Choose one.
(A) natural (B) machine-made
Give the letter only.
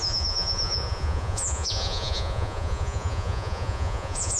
B